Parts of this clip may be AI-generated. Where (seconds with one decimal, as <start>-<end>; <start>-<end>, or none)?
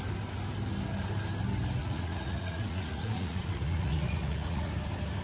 1.8-4.7